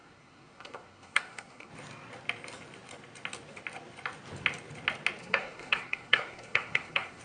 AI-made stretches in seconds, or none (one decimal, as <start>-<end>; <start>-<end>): 0.0-1.7; 5.2-7.2